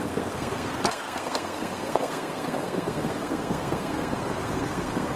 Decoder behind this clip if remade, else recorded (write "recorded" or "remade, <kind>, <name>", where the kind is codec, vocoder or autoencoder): remade, codec, SNAC